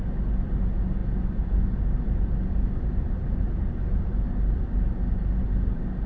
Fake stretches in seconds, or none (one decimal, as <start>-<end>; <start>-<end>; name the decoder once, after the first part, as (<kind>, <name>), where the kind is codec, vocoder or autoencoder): none

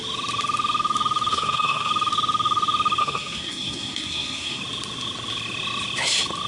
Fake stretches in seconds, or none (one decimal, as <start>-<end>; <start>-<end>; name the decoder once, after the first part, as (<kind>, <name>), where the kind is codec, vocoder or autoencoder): 1.3-1.9 (codec, SNAC); 3.0-4.6

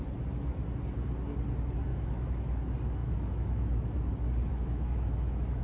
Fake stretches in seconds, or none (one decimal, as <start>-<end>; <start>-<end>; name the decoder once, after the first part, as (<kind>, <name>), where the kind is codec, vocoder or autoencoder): 1.9-2.6 (autoencoder, DAC-VAE); 3.0-4.1; 4.5-5.6

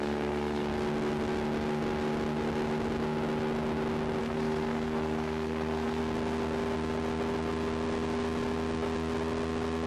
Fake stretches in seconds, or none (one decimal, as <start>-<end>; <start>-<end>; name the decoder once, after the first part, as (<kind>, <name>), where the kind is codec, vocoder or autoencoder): 0.0-0.7 (codec, SNAC); 4.2-6.0